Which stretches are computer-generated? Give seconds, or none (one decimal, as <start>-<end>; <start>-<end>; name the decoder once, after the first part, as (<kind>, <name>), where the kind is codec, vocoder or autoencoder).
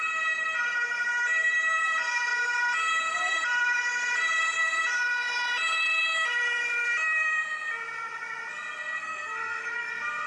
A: 9.0-9.9 (codec, DAC)